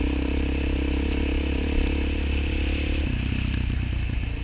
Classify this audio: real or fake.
real